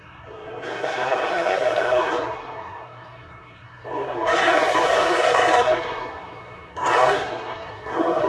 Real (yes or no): no